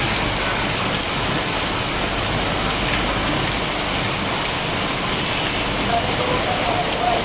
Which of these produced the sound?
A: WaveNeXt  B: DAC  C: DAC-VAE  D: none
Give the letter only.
D